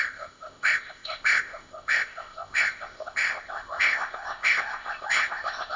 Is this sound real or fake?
fake